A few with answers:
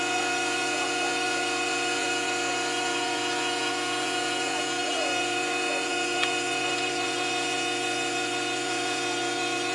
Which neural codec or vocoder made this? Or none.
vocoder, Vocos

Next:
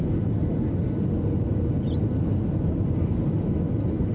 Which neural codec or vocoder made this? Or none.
none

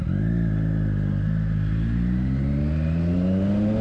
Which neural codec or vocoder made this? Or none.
none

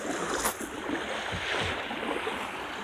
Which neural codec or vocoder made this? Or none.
none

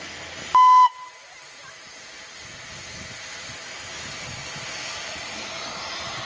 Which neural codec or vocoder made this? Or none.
none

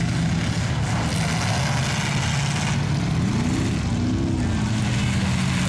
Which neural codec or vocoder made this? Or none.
none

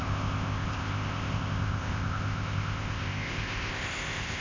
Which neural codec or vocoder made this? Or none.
codec, ZipCodec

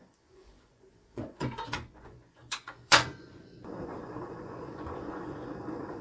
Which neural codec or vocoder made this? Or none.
vocoder, Vocos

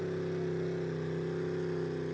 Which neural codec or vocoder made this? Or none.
none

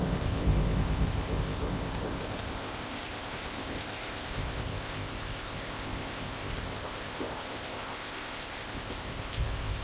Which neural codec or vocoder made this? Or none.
codec, ZipCodec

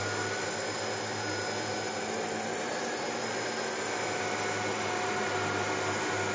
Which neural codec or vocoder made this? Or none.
none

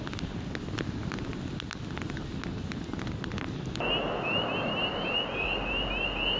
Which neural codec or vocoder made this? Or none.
none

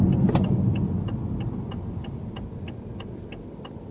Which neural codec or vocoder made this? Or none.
none